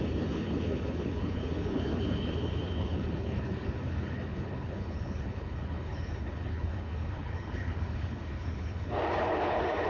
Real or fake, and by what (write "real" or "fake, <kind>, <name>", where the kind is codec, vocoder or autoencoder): fake, codec, HILCodec